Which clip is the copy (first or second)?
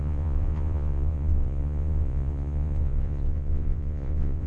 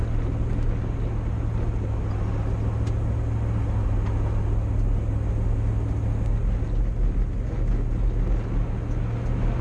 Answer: first